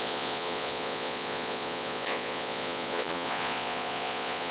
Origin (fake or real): fake